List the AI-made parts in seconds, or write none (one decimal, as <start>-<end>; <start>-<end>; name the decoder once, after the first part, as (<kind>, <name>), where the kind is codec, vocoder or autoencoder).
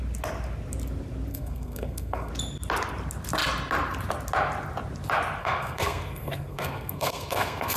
1.3-2.3 (codec, SNAC); 5.4-7.8